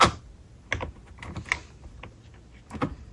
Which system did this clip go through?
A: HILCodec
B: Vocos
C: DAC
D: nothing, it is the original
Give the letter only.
D